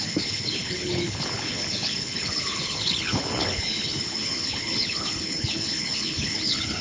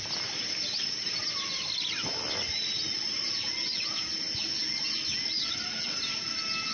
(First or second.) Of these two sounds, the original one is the second